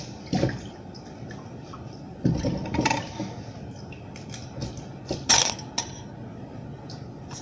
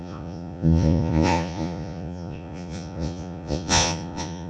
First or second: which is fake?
second